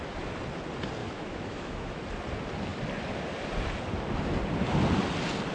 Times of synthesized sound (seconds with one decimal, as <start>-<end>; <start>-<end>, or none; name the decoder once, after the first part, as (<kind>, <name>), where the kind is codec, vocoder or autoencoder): 1.0-2.0 (autoencoder, DAC-VAE)